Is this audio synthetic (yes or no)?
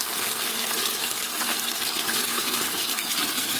yes